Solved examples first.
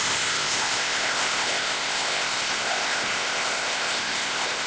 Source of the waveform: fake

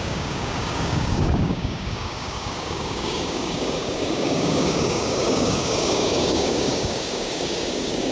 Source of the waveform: fake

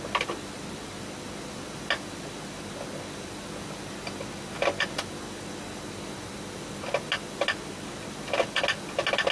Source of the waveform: real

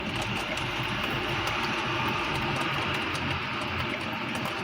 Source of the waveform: real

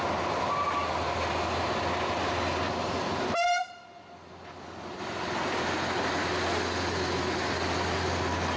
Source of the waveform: real